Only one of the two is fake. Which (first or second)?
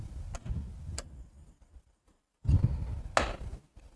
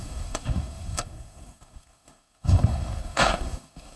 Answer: second